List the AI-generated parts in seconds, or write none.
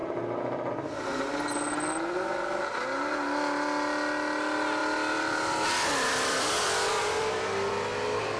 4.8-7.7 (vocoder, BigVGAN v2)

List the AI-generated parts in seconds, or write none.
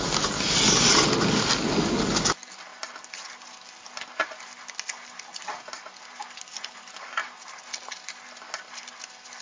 none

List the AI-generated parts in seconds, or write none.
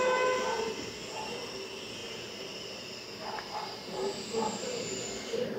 none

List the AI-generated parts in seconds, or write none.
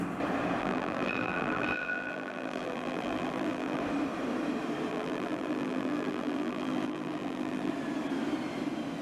0.6-3.8 (vocoder, BigVGAN v2); 4.9-7.7